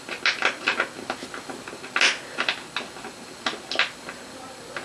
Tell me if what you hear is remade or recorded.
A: recorded